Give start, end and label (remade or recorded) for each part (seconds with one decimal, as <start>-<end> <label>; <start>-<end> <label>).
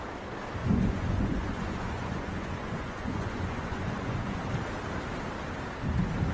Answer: 0.0-0.6 recorded; 0.6-4.4 remade; 4.4-6.3 recorded